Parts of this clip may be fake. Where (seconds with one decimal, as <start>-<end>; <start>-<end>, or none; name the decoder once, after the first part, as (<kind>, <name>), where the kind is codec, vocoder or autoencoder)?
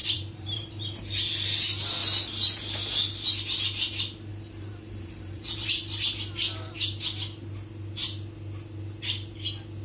0.0-1.0 (vocoder, BigVGAN v2); 4.3-6.1